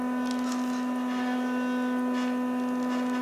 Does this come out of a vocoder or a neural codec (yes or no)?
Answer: no